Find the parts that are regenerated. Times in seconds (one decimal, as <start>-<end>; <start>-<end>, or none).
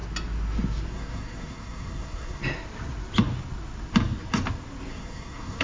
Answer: 0.9-2.4; 4.9-5.6